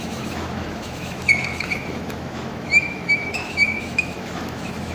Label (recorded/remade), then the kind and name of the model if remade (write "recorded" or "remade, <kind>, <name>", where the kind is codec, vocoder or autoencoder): remade, autoencoder, DAC-VAE